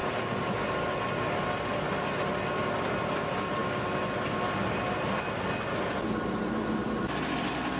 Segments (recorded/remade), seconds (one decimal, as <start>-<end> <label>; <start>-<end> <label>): 0.0-7.8 recorded